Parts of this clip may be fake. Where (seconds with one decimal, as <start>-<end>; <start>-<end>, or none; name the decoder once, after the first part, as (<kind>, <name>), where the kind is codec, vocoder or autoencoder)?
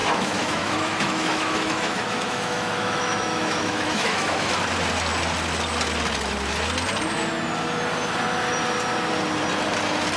0.0-4.5 (autoencoder, DAC-VAE)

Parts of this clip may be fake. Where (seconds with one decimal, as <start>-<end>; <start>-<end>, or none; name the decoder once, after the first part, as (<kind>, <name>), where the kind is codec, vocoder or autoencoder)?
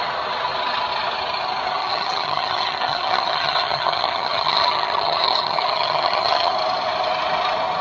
1.8-6.5 (vocoder, HiFi-GAN)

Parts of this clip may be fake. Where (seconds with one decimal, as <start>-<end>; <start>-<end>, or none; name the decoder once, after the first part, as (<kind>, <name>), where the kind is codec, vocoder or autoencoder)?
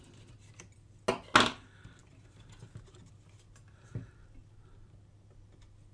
none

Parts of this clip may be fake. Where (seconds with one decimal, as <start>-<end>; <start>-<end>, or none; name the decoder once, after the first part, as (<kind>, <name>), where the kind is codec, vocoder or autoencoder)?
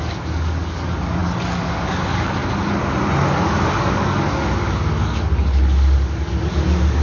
0.0-2.4 (codec, DAC); 3.3-7.0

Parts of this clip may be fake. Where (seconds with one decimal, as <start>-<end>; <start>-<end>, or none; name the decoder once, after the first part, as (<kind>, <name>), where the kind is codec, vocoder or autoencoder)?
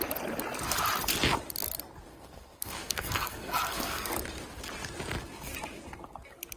2.1-4.1 (codec, SNAC)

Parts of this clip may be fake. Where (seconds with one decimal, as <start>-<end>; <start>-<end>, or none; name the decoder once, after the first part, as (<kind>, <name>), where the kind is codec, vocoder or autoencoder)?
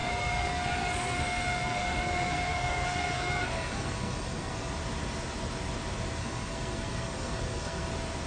0.0-4.7 (codec, SNAC); 6.2-7.9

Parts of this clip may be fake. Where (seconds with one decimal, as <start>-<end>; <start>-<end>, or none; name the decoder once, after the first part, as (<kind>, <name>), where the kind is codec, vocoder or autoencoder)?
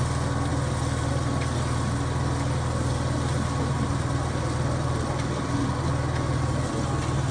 none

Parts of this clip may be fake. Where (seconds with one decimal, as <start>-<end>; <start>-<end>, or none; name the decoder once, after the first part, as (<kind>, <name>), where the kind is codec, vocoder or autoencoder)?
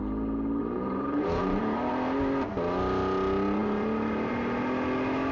0.6-1.9 (vocoder, BigVGAN v2); 3.6-4.3